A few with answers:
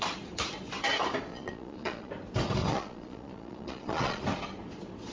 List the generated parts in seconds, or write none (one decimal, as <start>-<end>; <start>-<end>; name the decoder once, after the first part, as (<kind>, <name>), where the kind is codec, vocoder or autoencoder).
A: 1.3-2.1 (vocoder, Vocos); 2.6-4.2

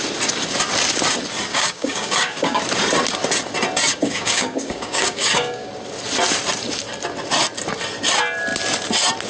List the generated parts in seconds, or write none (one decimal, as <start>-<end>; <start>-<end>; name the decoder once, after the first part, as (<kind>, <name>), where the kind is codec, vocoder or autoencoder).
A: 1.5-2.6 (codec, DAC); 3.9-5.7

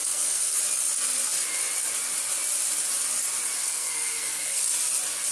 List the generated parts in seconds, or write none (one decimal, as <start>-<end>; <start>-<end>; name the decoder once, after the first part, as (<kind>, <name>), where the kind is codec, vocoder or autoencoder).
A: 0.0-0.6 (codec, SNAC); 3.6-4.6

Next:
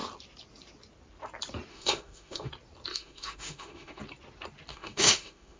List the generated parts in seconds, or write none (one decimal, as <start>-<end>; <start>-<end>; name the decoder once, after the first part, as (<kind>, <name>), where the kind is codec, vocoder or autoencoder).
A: 1.7-2.5 (autoencoder, DAC-VAE); 2.9-4.0; 4.7-5.6